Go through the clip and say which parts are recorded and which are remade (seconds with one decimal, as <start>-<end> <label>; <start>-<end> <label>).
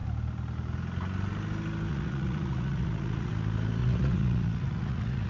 0.0-1.9 recorded; 1.9-3.3 remade; 3.3-3.8 recorded; 3.8-5.3 remade